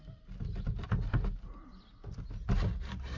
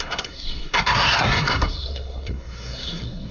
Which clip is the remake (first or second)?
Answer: second